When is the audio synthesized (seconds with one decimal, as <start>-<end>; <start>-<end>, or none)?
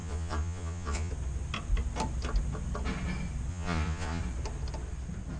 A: 0.0-1.1; 3.5-4.2